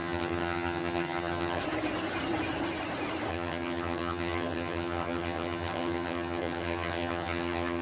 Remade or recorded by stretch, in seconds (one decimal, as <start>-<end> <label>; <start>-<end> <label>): 0.0-1.6 remade; 1.6-3.3 recorded; 3.3-7.8 remade